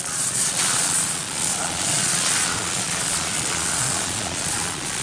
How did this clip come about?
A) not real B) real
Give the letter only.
A